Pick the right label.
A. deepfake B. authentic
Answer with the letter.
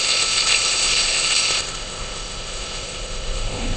A